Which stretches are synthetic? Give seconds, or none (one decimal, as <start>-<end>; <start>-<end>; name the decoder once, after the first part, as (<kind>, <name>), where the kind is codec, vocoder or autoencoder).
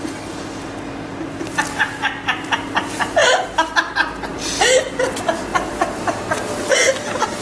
3.2-3.7 (vocoder, BigVGAN v2)